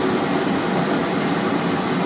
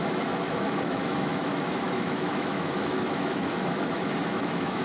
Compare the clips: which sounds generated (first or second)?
second